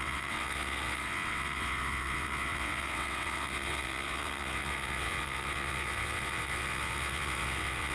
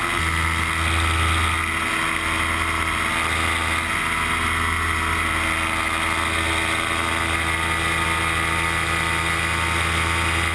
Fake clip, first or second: first